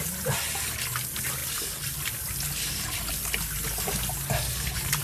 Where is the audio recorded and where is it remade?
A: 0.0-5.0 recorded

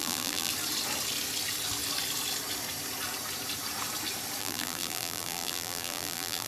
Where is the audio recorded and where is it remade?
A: 0.0-0.5 remade; 0.5-4.4 recorded; 4.4-6.5 remade

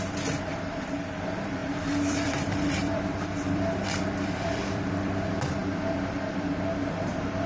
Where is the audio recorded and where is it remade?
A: 0.0-5.6 remade; 5.6-6.9 recorded; 6.9-7.5 remade

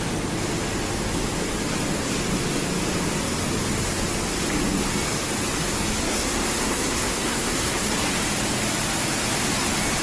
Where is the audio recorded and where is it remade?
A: 0.0-6.0 recorded; 6.0-7.9 remade; 7.9-10.0 recorded

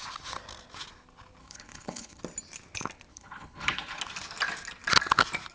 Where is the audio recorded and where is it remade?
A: 0.0-1.4 recorded; 1.4-2.2 remade; 2.2-3.1 recorded; 3.1-4.0 remade; 4.0-5.5 recorded